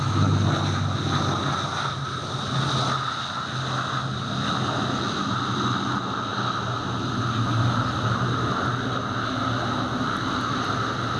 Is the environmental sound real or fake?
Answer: real